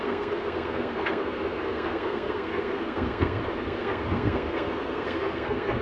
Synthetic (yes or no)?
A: yes